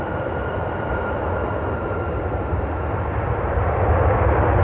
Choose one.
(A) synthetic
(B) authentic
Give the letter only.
B